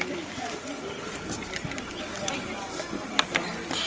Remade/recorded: recorded